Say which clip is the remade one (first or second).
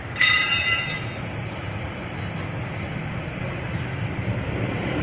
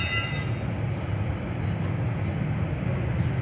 first